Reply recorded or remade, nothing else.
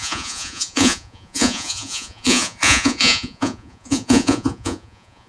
remade